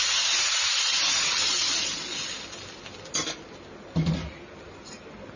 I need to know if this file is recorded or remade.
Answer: recorded